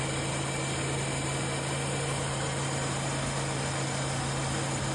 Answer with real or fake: real